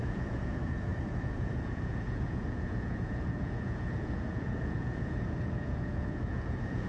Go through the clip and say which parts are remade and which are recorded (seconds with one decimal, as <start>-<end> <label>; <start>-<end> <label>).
0.0-6.9 remade